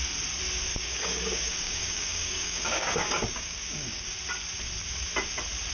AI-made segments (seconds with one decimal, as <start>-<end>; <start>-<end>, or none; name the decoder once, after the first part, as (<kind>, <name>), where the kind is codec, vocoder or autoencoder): 0.7-4.1 (codec, DAC)

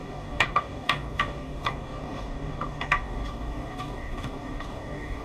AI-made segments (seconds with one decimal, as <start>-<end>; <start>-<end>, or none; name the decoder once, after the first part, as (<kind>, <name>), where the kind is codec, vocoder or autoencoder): 0.0-5.2 (codec, DAC)

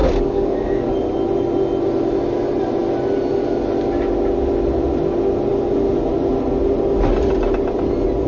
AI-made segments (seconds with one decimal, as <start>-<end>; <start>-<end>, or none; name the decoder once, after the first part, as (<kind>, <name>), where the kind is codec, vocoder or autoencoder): 0.0-0.9 (codec, DAC)

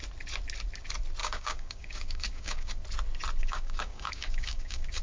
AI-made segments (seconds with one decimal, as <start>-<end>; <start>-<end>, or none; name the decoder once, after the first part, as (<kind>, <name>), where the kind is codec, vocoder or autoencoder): 1.2-2.7 (codec, DAC); 3.4-5.0